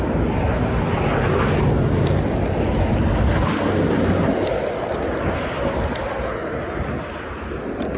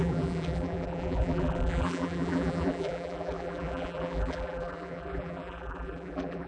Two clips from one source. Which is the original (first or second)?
first